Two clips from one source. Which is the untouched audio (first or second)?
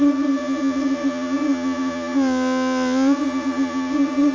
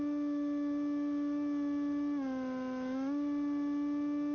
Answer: second